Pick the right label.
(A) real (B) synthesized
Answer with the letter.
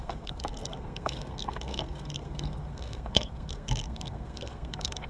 B